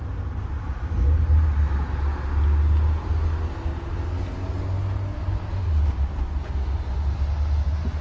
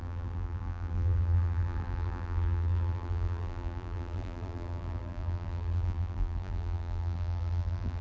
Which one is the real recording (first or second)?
first